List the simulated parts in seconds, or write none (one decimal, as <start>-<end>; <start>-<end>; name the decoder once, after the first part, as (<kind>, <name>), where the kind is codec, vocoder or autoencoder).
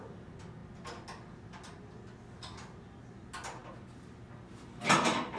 none